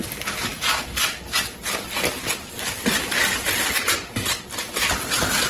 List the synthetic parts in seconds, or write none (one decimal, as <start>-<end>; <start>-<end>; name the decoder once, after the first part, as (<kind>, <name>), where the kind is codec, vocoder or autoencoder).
none